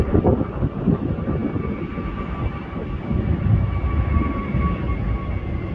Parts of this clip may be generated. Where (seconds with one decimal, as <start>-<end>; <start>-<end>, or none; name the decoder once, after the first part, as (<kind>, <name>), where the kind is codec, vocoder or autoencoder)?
none